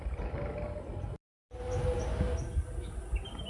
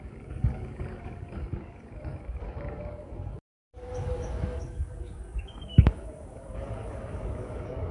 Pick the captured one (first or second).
first